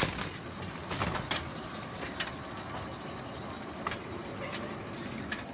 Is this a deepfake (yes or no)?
no